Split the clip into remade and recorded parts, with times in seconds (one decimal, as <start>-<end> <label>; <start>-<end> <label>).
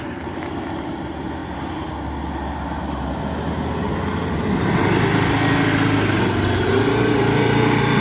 0.0-8.0 recorded